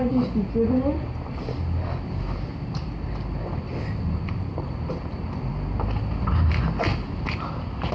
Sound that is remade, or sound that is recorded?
recorded